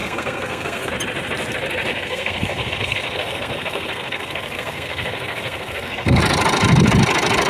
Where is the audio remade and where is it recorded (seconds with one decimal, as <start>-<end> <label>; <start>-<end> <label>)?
0.0-0.9 remade; 0.9-1.9 recorded; 1.9-6.2 remade; 6.2-7.5 recorded